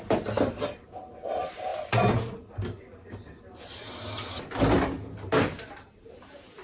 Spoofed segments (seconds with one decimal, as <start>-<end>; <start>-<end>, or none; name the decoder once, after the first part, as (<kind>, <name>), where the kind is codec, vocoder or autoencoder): none